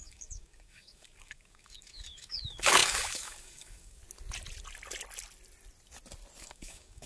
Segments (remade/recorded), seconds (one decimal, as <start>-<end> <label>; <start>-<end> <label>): 0.0-4.0 remade; 4.0-6.4 recorded; 6.4-7.1 remade